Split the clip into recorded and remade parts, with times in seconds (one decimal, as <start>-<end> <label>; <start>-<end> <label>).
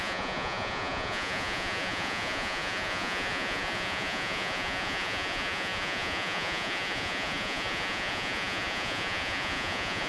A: 0.0-10.1 remade